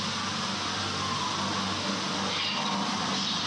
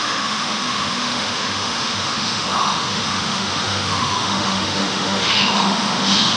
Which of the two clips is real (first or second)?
first